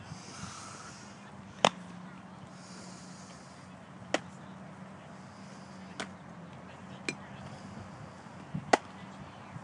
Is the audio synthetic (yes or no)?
no